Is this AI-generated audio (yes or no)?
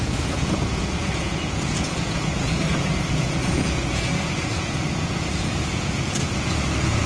yes